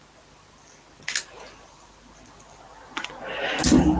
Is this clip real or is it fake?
real